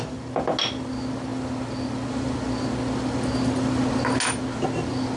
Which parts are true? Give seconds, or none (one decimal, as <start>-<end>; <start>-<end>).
0.0-5.2